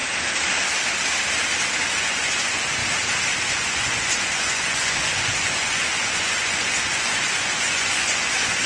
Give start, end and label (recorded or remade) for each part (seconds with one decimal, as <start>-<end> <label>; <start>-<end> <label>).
0.0-1.9 recorded; 1.9-2.8 remade; 2.8-3.5 recorded; 3.5-8.7 remade